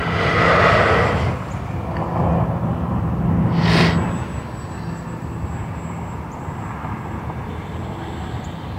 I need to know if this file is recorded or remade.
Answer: recorded